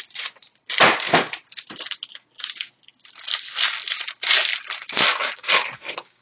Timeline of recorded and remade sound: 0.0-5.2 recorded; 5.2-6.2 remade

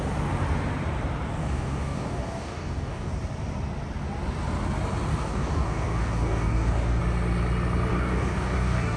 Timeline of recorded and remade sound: 0.0-1.4 recorded; 1.4-3.1 remade; 3.1-5.1 recorded; 5.1-7.0 remade; 7.0-7.9 recorded; 7.9-9.0 remade

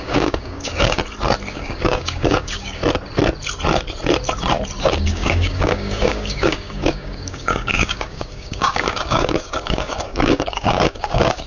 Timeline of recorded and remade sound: 0.0-1.0 remade; 1.0-1.5 recorded; 1.5-2.8 remade; 2.8-4.8 recorded; 4.8-11.5 remade

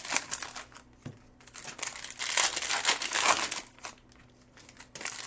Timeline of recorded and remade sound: 0.0-5.3 recorded

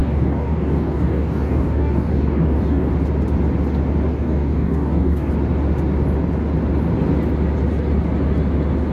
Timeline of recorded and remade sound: 0.0-2.9 remade; 2.9-4.1 recorded; 4.1-5.3 remade; 5.3-8.9 recorded

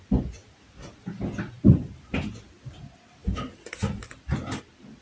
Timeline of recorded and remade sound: 0.0-5.0 recorded

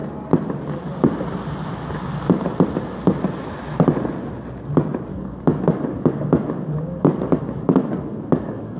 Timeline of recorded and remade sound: 0.0-5.1 recorded; 5.1-8.8 remade